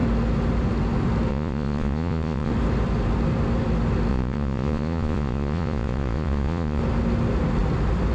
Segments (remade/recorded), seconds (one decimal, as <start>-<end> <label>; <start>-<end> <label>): 0.0-1.3 recorded; 1.3-2.5 remade; 2.5-4.1 recorded; 4.1-6.8 remade; 6.8-8.1 recorded